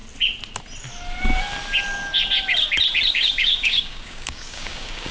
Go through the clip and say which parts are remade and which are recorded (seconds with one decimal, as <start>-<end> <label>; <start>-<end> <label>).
0.0-3.1 recorded; 3.1-5.1 remade